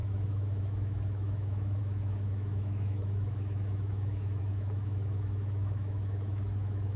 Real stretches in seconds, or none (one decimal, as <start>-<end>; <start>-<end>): none